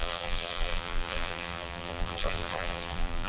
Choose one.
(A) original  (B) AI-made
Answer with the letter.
B